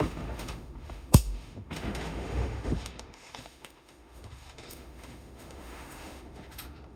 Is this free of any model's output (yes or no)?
no